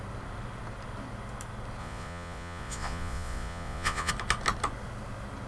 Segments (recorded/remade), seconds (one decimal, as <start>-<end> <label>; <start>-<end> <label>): 0.0-1.8 recorded; 1.8-4.1 remade; 4.1-5.5 recorded